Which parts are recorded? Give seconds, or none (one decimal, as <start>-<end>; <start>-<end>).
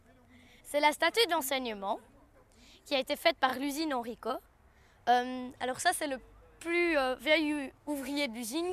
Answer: 0.0-7.8